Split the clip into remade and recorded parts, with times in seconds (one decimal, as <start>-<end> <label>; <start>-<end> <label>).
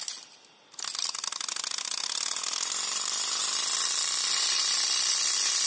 0.0-5.7 recorded